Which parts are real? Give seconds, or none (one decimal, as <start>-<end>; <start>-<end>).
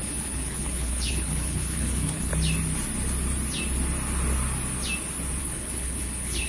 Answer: 2.3-5.4